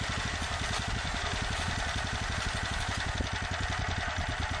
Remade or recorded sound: recorded